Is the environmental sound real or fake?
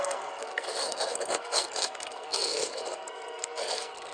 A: fake